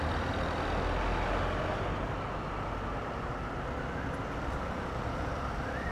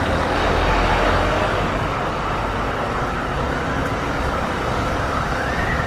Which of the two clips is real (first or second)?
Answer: first